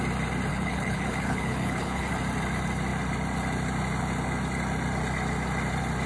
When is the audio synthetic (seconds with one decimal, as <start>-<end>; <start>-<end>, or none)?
0.5-2.1